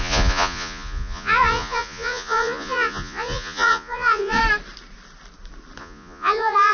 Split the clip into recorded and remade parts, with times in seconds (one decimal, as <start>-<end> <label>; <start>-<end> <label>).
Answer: 0.0-4.4 remade; 4.4-5.8 recorded; 5.8-6.7 remade